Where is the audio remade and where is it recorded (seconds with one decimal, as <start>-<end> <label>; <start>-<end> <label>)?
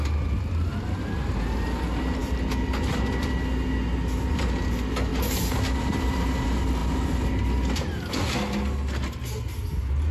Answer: 0.0-10.1 recorded